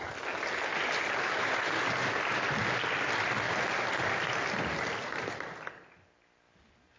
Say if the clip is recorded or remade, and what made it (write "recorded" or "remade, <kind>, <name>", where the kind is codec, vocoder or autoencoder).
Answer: recorded